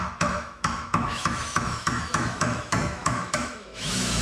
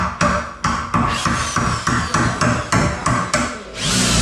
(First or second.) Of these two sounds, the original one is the second